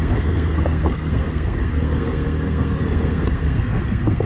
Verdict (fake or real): fake